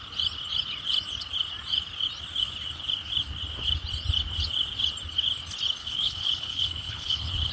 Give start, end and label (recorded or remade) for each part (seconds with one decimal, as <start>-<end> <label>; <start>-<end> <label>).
0.0-5.8 recorded; 5.8-7.5 remade